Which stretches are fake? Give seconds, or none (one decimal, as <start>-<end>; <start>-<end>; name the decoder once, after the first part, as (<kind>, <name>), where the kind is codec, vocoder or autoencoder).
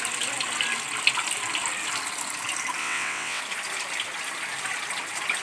2.8-3.4 (vocoder, WaveNeXt)